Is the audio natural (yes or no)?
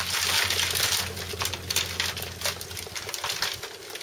yes